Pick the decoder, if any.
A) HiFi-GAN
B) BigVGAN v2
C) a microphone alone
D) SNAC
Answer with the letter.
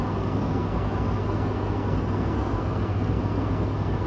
D